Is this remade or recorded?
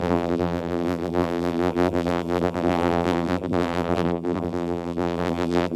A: remade